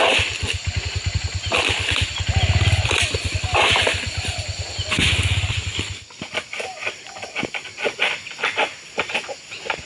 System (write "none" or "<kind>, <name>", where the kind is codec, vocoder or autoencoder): none